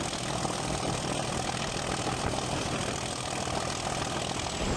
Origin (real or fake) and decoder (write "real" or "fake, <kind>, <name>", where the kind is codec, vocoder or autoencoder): real